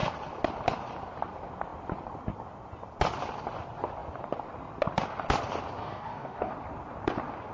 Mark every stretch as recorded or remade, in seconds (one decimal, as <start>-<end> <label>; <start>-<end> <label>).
0.0-5.8 recorded; 5.8-6.5 remade; 6.5-7.5 recorded